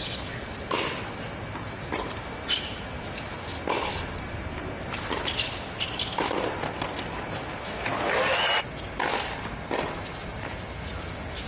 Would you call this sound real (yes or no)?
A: yes